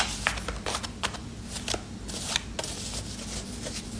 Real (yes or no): yes